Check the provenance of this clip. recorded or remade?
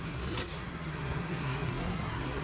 remade